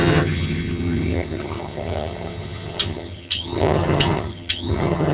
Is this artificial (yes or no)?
yes